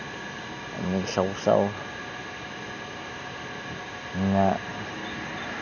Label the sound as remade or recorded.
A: recorded